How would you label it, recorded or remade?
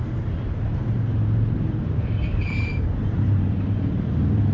remade